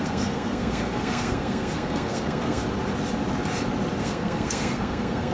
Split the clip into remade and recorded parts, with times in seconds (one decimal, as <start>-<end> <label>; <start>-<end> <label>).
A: 0.0-2.6 remade; 2.6-4.0 recorded; 4.0-5.3 remade